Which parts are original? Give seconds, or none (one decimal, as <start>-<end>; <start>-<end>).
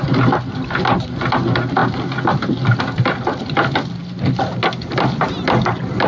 0.0-6.1